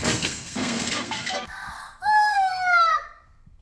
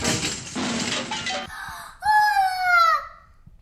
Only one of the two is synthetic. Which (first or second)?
first